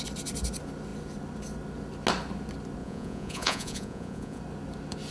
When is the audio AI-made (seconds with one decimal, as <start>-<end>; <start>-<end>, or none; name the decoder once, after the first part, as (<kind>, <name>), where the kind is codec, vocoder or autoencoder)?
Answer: 2.8-4.4 (vocoder, Vocos)